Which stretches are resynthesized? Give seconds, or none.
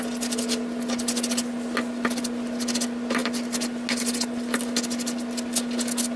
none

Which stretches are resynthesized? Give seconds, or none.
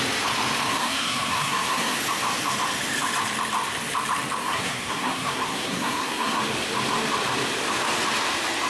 0.7-2.0; 4.4-6.4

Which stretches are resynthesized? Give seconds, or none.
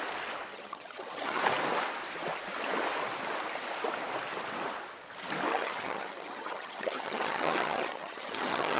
0.5-1.4; 5.5-8.8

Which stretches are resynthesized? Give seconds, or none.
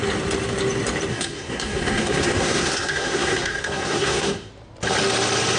1.1-4.5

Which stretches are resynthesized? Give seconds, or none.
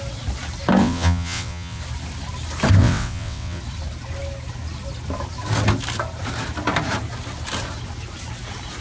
0.8-1.8; 2.8-3.6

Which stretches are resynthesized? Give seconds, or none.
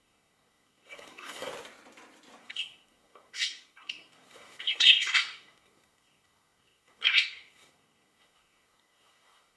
0.0-1.5; 2.4-9.6